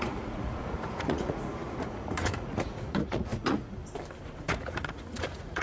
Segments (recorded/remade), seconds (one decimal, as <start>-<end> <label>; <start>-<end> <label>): 0.0-3.8 remade; 3.8-4.4 recorded; 4.4-5.6 remade